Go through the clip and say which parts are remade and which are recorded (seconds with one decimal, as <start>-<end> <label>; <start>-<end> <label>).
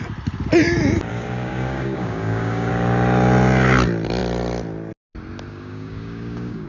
0.0-1.1 recorded; 1.1-2.7 remade; 2.7-5.5 recorded; 5.5-6.7 remade